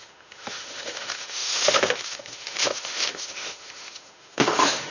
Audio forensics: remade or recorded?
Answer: remade